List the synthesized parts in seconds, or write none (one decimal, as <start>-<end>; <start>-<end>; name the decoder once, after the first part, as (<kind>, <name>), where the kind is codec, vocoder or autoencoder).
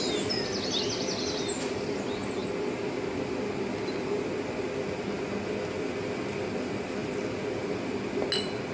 none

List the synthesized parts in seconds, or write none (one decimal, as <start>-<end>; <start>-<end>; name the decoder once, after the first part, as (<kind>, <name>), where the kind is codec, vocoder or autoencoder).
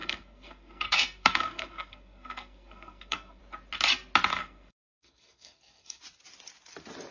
0.0-3.4 (codec, SNAC); 4.3-6.0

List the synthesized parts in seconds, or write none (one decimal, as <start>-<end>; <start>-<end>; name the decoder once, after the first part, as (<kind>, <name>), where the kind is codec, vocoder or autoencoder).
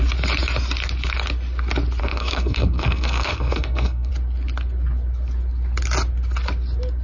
2.0-4.1 (codec, SNAC)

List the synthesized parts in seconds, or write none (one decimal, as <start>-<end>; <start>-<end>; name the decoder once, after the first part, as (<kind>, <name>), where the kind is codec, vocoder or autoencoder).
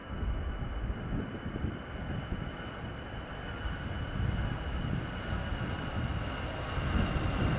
none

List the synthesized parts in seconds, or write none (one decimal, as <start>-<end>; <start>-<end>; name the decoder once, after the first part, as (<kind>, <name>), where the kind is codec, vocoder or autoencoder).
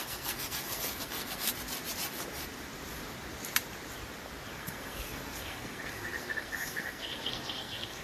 0.0-1.5 (codec, SNAC); 4.5-8.0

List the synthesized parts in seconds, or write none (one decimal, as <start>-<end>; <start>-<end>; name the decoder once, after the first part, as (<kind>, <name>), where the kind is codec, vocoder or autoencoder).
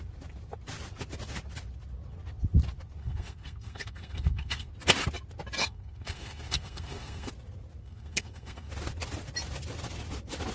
3.0-4.7 (codec, SNAC); 5.6-7.3; 7.8-8.7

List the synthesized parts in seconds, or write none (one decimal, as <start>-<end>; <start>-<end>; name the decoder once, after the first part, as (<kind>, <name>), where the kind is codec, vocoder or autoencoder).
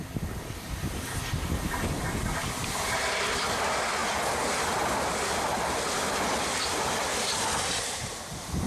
none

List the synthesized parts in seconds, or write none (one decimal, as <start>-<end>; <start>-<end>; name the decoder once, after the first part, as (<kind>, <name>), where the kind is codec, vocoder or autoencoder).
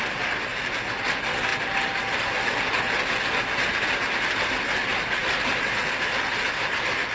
none